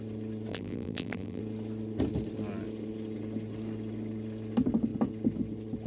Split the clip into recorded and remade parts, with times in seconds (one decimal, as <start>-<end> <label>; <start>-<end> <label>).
0.0-0.5 recorded; 0.5-1.4 remade; 1.4-5.9 recorded